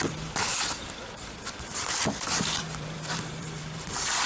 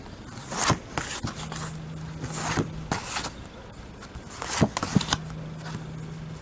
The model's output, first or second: first